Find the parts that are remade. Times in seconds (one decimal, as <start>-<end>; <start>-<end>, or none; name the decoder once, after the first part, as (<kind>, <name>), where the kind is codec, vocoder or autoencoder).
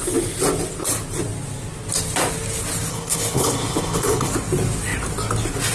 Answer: 2.9-4.3 (codec, HILCodec)